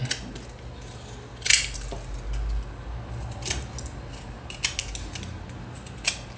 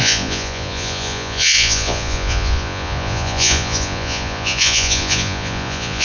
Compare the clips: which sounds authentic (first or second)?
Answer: first